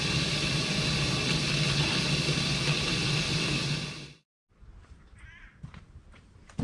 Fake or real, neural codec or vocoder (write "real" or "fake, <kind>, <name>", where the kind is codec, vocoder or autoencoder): real